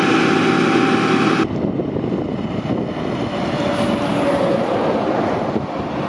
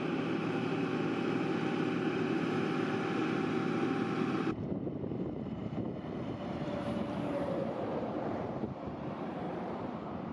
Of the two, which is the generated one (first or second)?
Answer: second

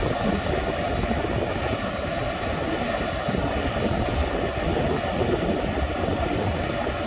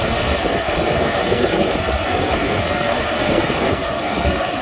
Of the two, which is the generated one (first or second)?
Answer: second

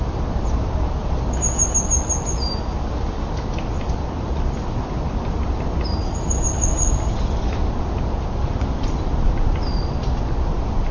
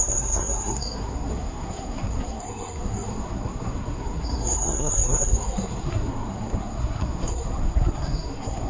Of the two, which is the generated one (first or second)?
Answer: second